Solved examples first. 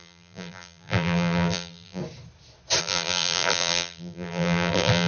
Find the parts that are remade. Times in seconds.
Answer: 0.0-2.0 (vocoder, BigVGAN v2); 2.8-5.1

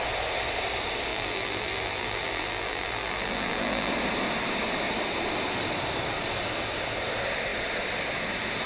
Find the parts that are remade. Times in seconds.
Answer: 1.1-3.9 (vocoder, BigVGAN v2)

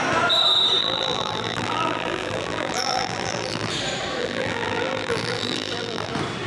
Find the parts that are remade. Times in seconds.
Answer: 0.8-3.7 (vocoder, BigVGAN v2); 4.2-6.1

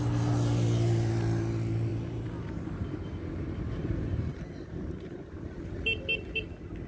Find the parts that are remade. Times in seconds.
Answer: 1.9-5.6 (vocoder, BigVGAN v2)

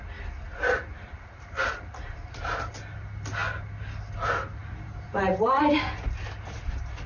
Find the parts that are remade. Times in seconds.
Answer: 0.9-2.7 (vocoder, BigVGAN v2); 4.6-5.6

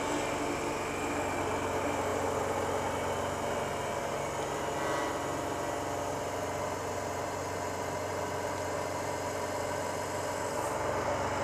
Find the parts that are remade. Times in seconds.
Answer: 5.2-6.6 (vocoder, BigVGAN v2); 8.1-9.6